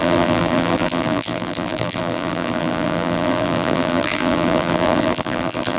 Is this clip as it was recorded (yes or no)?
no